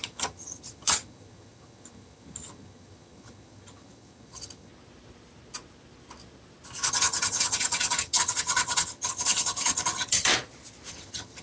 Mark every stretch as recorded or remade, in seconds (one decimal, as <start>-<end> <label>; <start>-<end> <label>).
0.0-4.7 remade; 4.7-6.9 recorded; 6.9-10.3 remade; 10.3-10.9 recorded; 10.9-11.4 remade